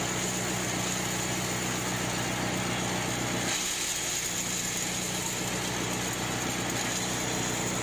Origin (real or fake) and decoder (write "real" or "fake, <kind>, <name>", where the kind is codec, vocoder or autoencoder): real